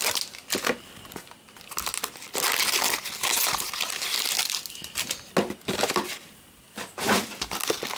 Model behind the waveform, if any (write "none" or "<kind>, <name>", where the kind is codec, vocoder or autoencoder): none